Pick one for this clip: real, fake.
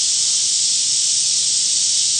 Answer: fake